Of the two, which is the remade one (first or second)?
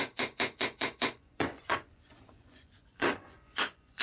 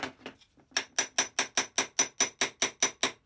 first